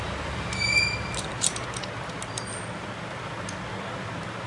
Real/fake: real